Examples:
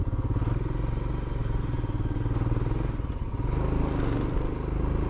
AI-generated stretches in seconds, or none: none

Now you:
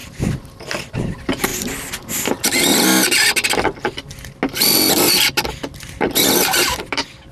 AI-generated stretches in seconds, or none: none

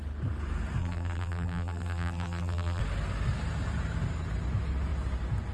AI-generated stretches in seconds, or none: 0.8-2.8 (vocoder, BigVGAN v2)

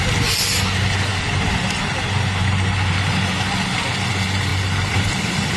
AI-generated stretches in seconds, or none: 4.5-5.6 (vocoder, BigVGAN v2)

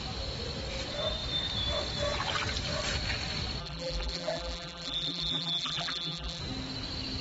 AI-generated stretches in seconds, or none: 3.6-6.4 (vocoder, BigVGAN v2)

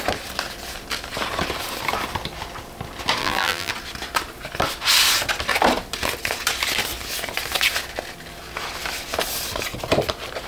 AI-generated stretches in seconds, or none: 3.2-3.7 (vocoder, BigVGAN v2)